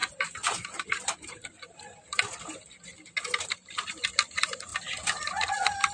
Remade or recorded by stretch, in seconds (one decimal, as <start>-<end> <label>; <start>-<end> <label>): 0.0-5.9 recorded